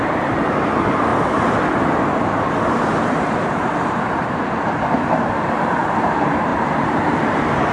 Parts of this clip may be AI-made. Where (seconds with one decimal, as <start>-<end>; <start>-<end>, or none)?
0.0-1.1; 3.1-7.7